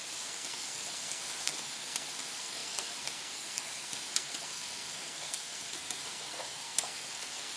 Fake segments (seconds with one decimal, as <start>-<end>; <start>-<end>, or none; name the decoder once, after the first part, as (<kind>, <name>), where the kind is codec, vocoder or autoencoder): 0.0-7.6 (codec, SNAC)